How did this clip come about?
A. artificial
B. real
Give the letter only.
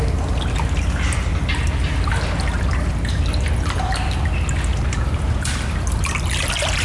B